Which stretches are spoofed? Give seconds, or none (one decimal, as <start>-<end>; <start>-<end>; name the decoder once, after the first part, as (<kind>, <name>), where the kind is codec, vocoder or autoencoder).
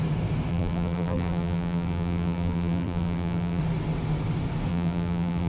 0.5-3.6 (vocoder, BigVGAN v2); 4.7-5.5